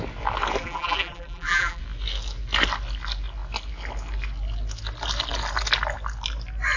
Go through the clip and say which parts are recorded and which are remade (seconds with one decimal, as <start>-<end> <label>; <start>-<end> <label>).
0.0-0.6 recorded; 0.6-1.8 remade; 1.8-6.8 recorded